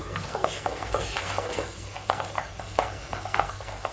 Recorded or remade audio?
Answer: remade